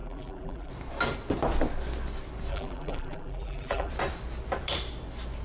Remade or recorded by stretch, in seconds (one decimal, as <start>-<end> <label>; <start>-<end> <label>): 0.0-0.7 remade; 0.7-2.5 recorded; 2.5-3.9 remade; 3.9-5.4 recorded